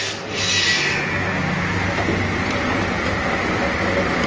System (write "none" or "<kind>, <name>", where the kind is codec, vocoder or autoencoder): none